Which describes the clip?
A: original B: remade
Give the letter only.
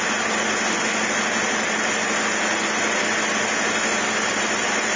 A